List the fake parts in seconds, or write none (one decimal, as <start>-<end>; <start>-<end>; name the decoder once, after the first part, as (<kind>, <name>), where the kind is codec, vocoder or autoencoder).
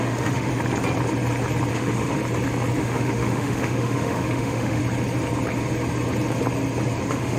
0.0-0.5 (autoencoder, DAC-VAE); 1.7-2.2; 2.8-4.8; 7.0-7.4